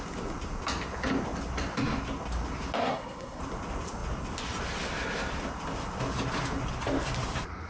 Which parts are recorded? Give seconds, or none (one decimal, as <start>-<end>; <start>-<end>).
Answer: 0.0-2.8; 3.4-7.7